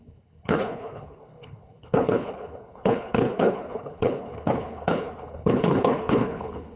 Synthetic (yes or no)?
yes